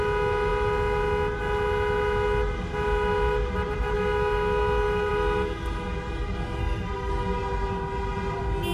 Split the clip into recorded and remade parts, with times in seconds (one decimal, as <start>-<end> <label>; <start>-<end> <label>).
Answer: 0.0-6.6 recorded; 6.6-7.1 remade; 7.1-8.7 recorded